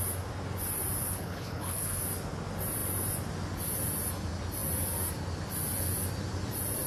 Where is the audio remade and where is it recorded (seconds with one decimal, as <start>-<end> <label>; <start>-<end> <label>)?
0.0-1.1 recorded; 1.1-2.0 remade; 2.0-6.9 recorded